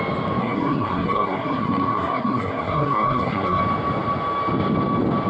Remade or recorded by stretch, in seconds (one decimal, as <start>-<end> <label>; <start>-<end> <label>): 0.0-0.4 recorded; 0.4-3.6 remade; 3.6-5.3 recorded